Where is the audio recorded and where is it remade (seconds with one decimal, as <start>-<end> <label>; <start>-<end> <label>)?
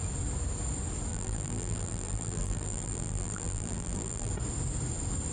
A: 0.0-1.1 recorded; 1.1-4.3 remade; 4.3-5.3 recorded